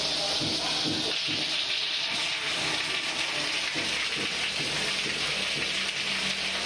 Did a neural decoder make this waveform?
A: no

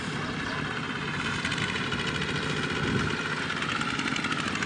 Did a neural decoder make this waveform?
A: no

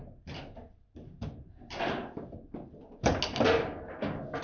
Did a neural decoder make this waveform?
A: no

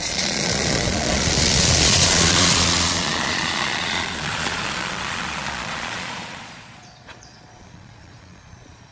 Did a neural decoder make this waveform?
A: yes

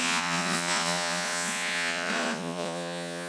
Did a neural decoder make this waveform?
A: yes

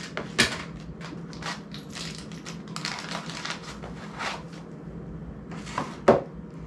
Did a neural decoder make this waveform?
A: no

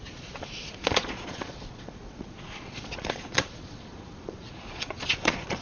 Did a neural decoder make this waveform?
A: yes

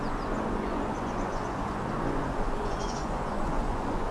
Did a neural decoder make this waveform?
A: yes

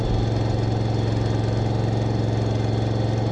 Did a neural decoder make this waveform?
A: no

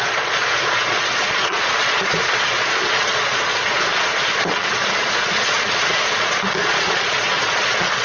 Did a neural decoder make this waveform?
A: yes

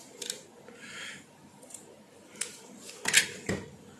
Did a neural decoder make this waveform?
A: no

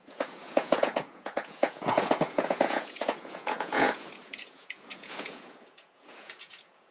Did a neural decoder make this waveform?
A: yes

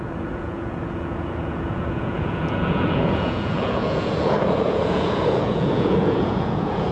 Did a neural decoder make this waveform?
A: yes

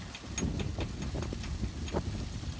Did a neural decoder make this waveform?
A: no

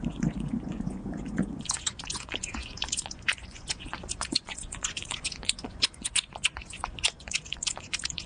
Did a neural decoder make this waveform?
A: yes